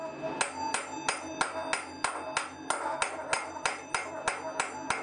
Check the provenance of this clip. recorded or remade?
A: recorded